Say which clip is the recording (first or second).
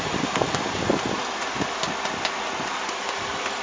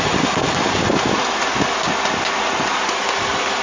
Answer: second